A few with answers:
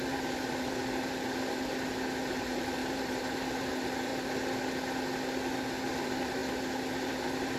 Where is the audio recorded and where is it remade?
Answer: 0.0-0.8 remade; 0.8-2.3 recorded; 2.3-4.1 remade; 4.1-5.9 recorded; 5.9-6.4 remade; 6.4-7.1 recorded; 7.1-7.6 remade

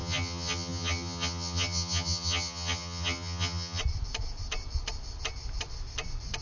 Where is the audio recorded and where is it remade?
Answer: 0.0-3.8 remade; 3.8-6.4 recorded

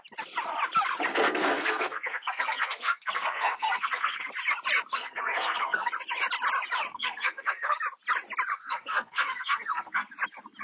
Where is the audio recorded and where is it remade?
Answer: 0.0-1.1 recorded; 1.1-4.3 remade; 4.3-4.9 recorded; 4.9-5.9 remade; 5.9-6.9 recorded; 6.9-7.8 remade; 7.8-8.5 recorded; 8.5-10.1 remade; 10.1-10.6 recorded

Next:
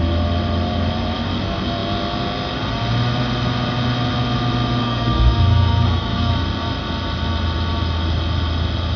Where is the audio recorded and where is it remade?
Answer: 0.0-4.8 recorded; 4.8-6.3 remade; 6.3-9.0 recorded

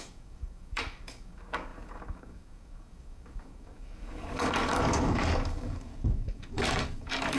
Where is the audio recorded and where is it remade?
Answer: 0.0-7.4 remade

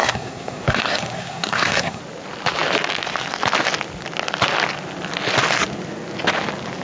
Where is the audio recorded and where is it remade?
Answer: 0.0-2.0 remade; 2.0-6.8 recorded

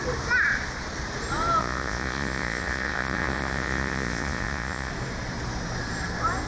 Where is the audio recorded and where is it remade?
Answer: 0.0-1.6 recorded; 1.6-4.9 remade; 4.9-6.5 recorded

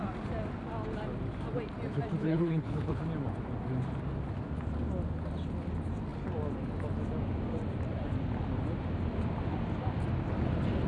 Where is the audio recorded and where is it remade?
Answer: 0.0-2.2 recorded; 2.2-3.0 remade; 3.0-10.9 recorded